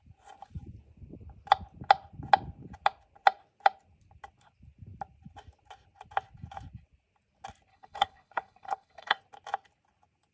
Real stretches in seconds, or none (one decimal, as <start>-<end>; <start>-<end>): 0.0-7.7; 9.2-10.3